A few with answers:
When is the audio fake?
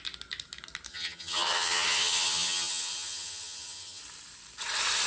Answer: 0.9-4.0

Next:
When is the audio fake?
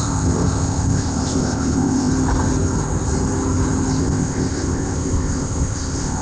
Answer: 0.0-2.1; 4.0-6.2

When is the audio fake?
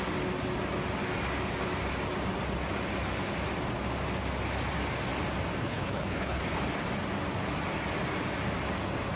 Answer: 5.6-6.4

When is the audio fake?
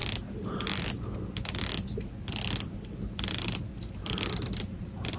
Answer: none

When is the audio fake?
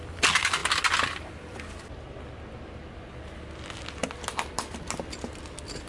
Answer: none